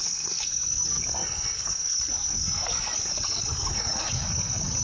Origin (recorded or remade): remade